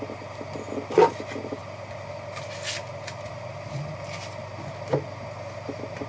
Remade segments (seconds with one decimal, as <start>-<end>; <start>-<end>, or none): none